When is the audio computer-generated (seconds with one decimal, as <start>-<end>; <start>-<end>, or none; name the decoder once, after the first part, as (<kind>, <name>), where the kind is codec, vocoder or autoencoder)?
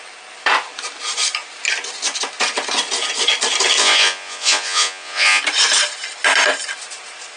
3.8-5.4 (vocoder, Vocos)